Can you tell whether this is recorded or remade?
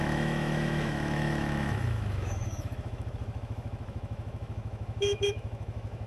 remade